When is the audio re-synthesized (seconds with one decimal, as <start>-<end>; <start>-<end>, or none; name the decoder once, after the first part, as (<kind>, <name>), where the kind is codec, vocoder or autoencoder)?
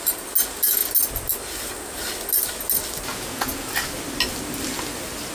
3.1-3.7 (vocoder, Vocos)